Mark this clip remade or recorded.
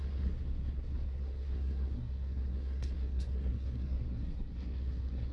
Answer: remade